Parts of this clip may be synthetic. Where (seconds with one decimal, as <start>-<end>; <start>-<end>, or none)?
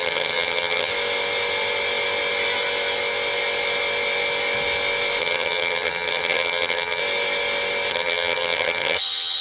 0.0-0.9; 5.2-7.0; 7.9-9.4